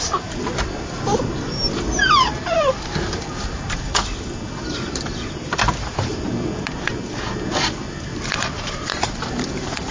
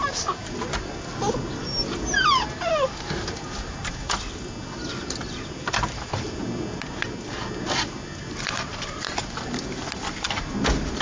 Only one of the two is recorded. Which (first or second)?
second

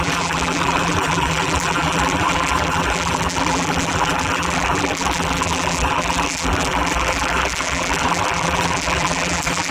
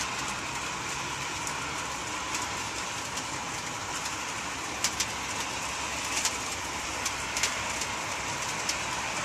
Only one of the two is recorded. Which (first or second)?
second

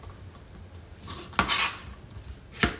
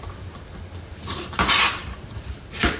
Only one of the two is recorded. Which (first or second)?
first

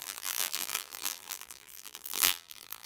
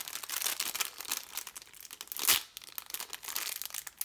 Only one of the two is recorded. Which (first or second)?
second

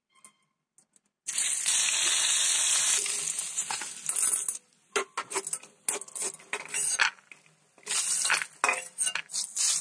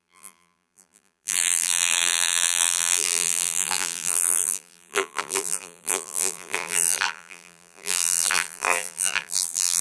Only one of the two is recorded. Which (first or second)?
first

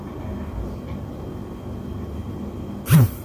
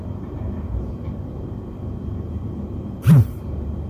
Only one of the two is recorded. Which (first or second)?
first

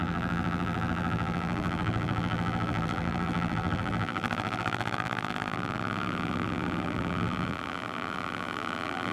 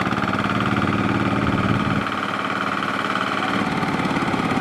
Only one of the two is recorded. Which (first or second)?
second